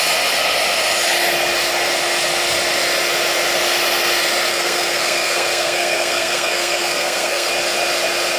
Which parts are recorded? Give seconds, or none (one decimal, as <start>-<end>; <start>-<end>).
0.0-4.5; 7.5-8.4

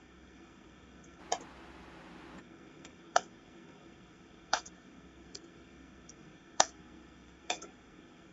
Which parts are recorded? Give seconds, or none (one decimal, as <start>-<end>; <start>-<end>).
1.2-2.4

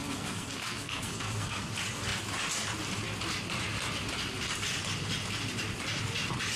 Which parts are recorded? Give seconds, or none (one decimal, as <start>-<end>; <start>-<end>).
1.7-6.6

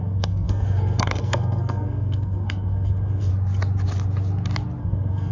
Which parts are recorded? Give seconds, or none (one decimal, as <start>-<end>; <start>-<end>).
3.3-4.8